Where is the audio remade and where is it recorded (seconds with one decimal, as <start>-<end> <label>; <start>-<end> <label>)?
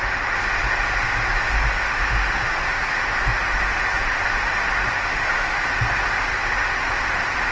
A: 0.0-1.9 recorded; 1.9-3.0 remade; 3.0-5.1 recorded; 5.1-5.7 remade; 5.7-7.5 recorded